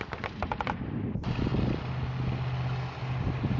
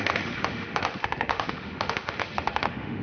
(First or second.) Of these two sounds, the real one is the first